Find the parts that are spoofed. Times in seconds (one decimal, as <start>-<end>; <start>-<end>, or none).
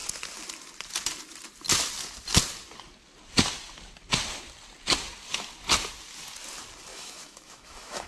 6.9-8.1